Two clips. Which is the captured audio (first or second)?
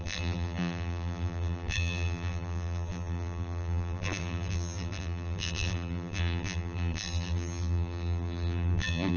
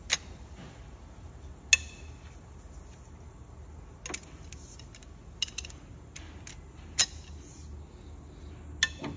second